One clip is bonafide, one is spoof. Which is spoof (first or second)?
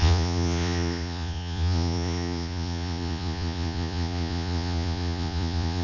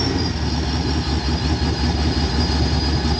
first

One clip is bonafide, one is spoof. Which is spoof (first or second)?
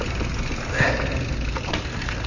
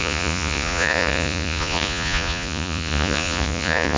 second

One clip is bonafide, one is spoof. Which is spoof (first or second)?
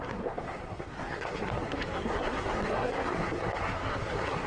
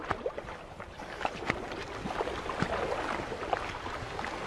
first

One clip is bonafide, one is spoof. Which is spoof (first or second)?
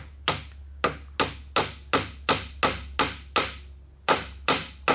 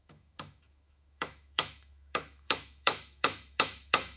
second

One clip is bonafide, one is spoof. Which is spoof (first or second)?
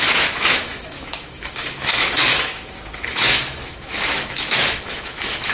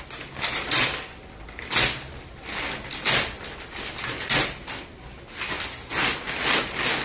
first